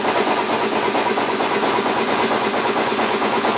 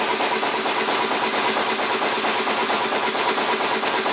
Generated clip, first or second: first